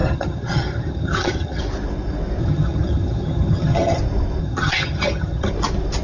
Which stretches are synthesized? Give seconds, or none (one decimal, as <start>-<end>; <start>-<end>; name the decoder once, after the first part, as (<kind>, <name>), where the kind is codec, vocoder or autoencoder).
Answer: 0.0-1.6 (vocoder, HiFi-GAN); 2.4-4.0; 4.4-5.5